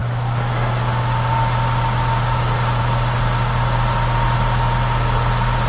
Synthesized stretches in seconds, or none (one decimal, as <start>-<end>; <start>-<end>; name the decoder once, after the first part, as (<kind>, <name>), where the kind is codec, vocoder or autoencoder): none